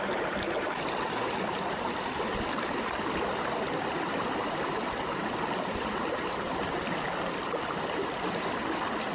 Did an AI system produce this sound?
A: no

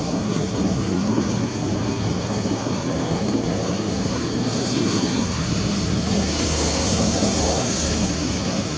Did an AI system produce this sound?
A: yes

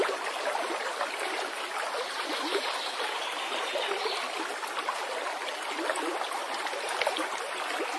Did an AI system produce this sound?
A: no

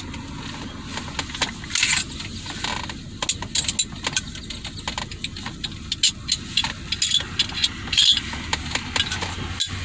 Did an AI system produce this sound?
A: no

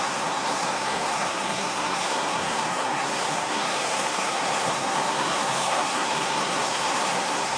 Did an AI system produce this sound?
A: yes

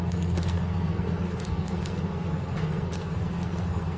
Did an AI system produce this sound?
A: yes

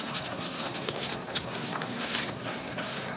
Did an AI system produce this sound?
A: yes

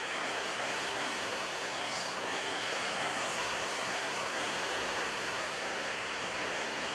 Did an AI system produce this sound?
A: yes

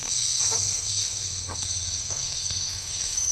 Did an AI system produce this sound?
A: yes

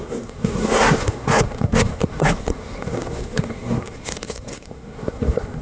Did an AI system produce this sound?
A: yes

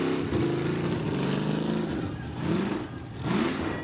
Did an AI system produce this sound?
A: no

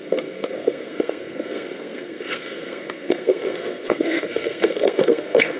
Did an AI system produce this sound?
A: yes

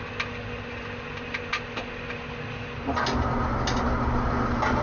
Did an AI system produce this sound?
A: no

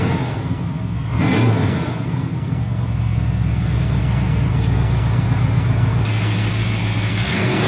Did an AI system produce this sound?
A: yes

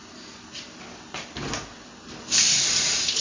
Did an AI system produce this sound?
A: no